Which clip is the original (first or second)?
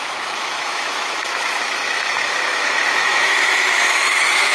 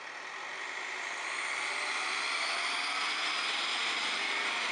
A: second